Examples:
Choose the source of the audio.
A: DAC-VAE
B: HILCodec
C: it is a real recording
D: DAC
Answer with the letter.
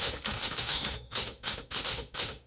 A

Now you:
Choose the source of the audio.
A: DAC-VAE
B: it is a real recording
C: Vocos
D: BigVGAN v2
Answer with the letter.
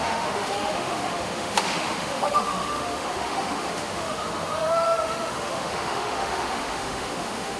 A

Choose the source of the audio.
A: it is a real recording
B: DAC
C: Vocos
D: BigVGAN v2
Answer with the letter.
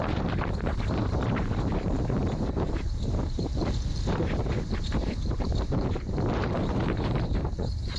D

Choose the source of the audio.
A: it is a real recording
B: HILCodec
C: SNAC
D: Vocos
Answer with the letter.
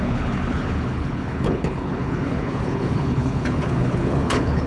B